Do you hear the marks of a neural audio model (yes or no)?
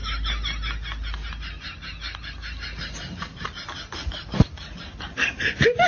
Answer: no